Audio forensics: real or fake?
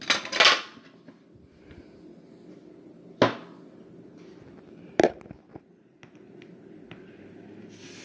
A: real